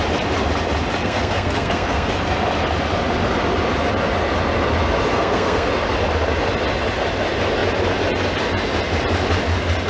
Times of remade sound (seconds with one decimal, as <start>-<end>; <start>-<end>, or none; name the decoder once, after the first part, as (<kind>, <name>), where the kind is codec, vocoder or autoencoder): 1.0-2.1 (codec, SNAC); 5.1-5.7